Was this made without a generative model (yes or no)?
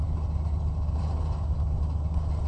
yes